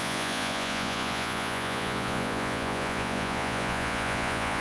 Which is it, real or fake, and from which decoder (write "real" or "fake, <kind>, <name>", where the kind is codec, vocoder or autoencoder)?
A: fake, vocoder, Vocos